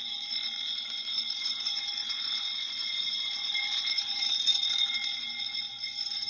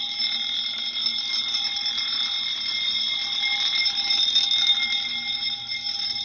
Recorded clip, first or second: second